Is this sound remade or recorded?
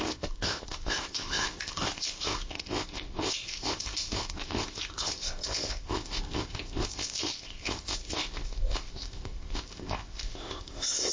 remade